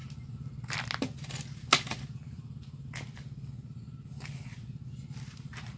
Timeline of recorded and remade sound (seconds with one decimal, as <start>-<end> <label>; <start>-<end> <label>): 0.0-5.8 recorded